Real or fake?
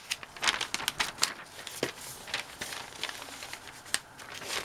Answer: real